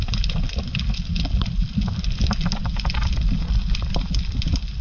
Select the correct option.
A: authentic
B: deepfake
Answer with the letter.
A